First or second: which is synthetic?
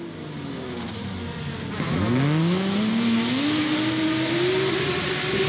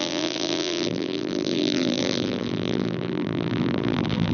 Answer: second